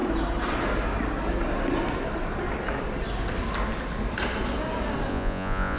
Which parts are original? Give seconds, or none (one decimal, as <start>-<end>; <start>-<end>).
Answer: 0.0-5.1